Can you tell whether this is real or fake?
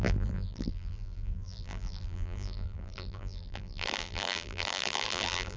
fake